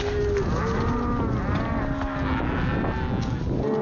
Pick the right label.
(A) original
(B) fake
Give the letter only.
A